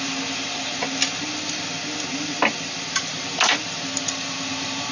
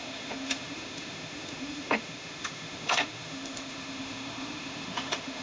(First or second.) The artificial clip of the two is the second